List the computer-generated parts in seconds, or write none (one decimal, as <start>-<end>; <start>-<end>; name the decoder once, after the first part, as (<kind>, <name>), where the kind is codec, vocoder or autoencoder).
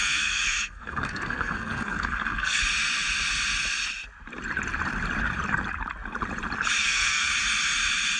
0.0-2.6 (codec, SNAC); 6.8-7.3